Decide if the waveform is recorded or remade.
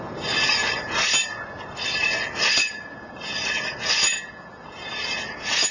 recorded